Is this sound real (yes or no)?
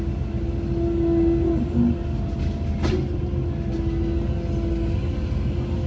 yes